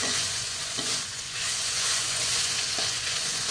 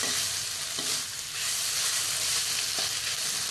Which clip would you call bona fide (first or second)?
second